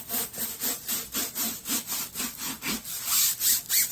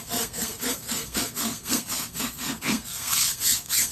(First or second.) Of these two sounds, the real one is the first